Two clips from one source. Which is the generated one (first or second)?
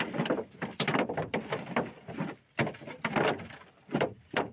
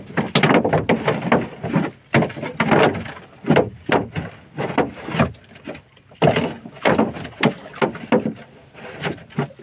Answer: first